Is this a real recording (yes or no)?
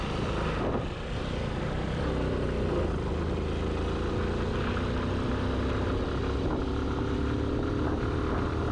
yes